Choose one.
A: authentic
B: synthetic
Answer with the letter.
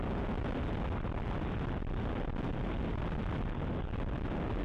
A